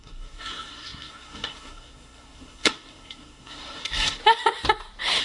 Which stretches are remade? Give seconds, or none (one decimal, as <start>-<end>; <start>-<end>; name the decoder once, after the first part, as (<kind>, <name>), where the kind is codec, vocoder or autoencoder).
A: 0.0-4.2 (codec, SNAC)